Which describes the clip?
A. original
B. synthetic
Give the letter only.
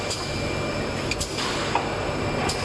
A